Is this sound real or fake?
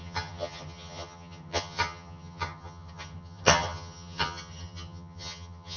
fake